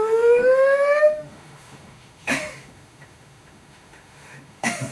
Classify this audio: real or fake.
fake